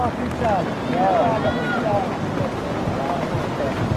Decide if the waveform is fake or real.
real